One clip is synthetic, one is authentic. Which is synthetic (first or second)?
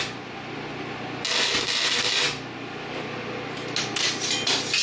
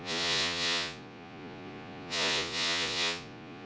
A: second